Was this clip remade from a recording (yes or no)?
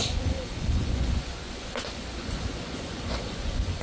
yes